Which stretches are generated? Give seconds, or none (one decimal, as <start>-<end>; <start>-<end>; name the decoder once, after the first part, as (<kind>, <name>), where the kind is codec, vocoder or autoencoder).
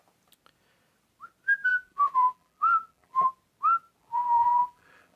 1.7-3.3 (vocoder, BigVGAN v2); 4.0-5.2